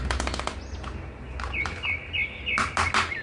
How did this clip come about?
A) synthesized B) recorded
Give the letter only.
B